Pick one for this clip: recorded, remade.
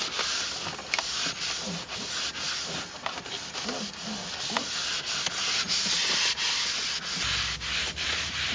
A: recorded